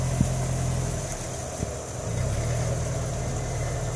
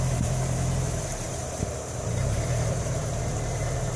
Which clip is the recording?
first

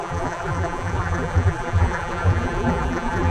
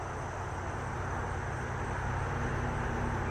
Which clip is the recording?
second